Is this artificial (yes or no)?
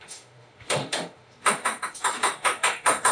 yes